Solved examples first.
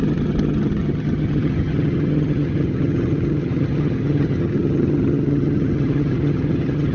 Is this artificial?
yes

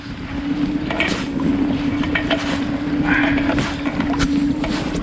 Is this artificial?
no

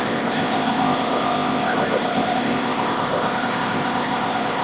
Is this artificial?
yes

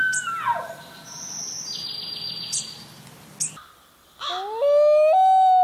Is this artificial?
no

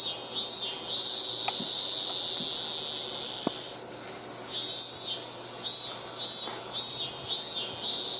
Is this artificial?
no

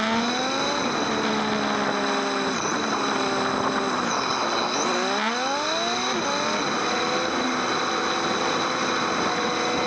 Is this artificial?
no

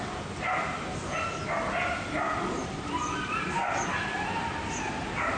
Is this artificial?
no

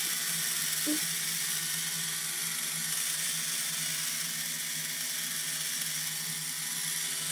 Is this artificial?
no